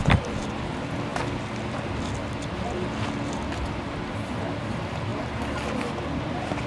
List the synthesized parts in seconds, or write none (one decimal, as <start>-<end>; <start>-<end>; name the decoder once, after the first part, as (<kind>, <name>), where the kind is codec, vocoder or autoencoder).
none